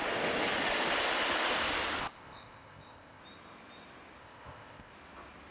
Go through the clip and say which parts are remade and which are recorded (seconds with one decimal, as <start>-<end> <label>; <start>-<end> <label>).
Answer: 0.0-2.0 recorded; 2.0-3.2 remade; 3.2-4.2 recorded; 4.2-4.9 remade; 4.9-5.5 recorded